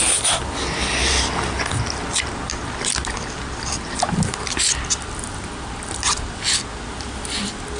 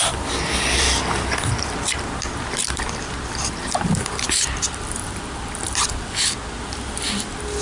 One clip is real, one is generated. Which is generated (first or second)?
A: second